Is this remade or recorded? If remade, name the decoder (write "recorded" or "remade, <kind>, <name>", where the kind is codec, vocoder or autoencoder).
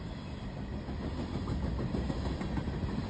recorded